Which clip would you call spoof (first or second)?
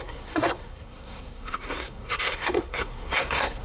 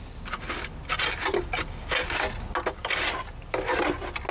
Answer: first